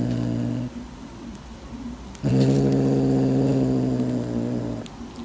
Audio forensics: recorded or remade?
recorded